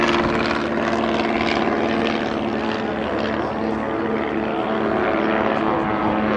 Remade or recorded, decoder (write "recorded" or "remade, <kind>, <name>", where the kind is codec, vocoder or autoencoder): recorded